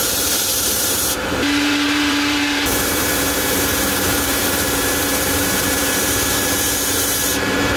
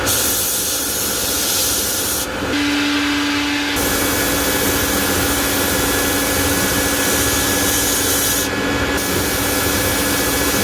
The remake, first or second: first